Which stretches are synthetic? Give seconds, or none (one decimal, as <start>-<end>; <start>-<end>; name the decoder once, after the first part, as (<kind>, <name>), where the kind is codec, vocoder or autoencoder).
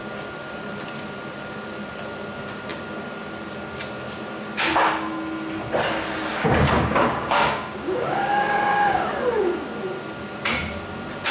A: 6.3-9.1 (codec, DAC)